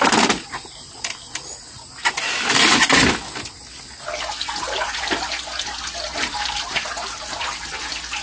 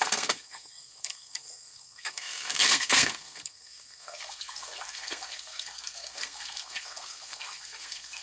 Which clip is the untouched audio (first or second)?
first